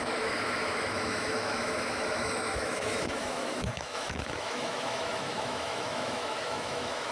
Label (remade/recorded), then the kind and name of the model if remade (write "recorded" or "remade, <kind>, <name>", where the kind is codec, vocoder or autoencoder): remade, autoencoder, DAC-VAE